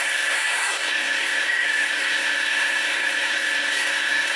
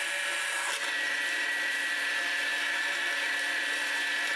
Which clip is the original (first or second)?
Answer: second